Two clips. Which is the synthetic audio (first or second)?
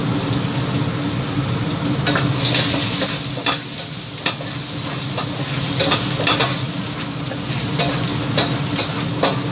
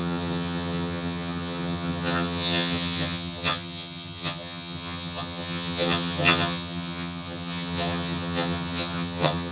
second